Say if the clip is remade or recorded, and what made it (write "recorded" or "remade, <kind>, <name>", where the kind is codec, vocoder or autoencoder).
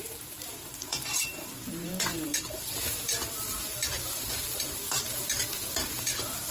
remade, vocoder, BigVGAN v2